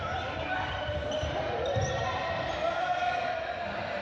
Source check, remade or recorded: recorded